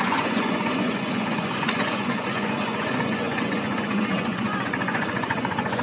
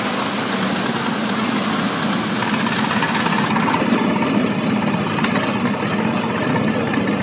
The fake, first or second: first